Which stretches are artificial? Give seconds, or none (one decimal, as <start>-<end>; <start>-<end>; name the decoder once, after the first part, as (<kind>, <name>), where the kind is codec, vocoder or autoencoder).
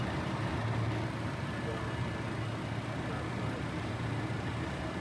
0.0-0.6 (vocoder, BigVGAN v2); 3.6-5.0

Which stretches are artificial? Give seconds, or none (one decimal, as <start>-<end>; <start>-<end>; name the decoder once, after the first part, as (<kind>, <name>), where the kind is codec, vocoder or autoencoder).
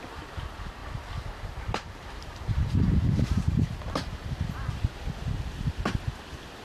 0.8-4.8 (vocoder, BigVGAN v2)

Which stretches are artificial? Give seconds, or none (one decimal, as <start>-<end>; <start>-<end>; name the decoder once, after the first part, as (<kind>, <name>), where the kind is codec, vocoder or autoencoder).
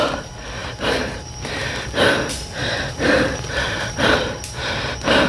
0.6-1.2 (vocoder, BigVGAN v2)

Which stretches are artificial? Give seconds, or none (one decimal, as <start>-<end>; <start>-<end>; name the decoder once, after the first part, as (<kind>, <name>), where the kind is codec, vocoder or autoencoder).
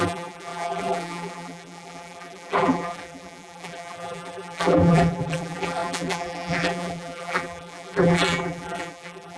0.0-9.4 (vocoder, BigVGAN v2)